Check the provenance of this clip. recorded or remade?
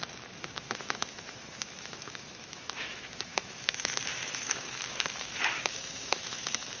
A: remade